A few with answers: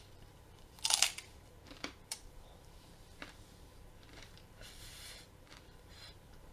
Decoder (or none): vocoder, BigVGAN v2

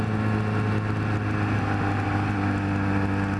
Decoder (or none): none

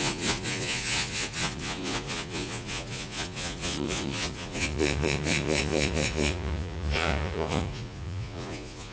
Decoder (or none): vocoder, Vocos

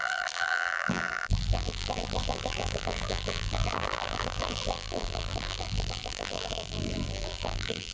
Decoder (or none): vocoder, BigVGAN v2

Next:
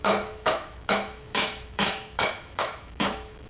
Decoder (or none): autoencoder, DAC-VAE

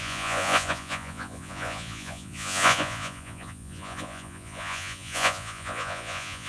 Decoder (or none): vocoder, Vocos